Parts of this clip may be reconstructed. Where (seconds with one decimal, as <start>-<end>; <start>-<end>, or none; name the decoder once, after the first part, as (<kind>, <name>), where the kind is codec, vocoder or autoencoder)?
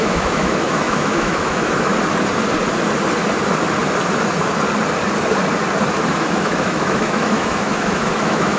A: 0.0-1.9 (autoencoder, DAC-VAE); 6.1-8.6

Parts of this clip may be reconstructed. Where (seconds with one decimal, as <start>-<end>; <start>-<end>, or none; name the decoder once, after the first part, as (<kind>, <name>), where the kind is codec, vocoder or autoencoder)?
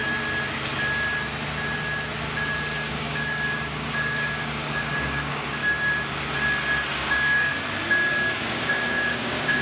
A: 2.9-5.6 (codec, DAC); 7.0-7.5; 8.1-9.6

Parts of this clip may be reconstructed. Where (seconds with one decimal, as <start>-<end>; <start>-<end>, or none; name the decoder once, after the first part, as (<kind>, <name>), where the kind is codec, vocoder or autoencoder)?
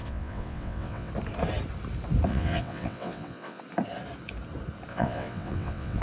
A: 0.0-1.1 (vocoder, WaveNeXt); 2.3-3.6; 4.9-6.0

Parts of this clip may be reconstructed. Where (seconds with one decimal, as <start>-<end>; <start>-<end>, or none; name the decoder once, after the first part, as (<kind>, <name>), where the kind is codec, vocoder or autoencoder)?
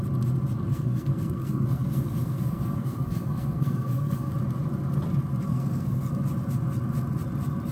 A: 0.7-4.3 (codec, SNAC); 5.5-6.1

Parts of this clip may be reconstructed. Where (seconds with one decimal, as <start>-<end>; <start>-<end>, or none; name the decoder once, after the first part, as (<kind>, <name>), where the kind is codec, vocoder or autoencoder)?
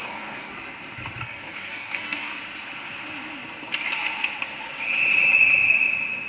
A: 0.0-0.5 (codec, DAC); 1.2-2.3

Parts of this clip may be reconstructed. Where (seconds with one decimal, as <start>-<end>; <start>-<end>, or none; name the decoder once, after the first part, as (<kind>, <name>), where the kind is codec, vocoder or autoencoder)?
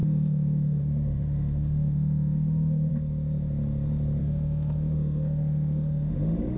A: 0.0-2.9 (autoencoder, DAC-VAE); 4.2-6.6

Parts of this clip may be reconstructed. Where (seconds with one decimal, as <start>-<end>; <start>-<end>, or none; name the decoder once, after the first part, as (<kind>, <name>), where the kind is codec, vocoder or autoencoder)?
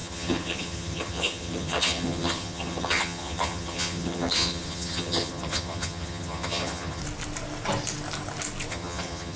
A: 0.0-7.0 (vocoder, HiFi-GAN); 8.7-9.4